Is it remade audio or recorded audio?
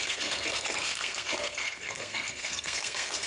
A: remade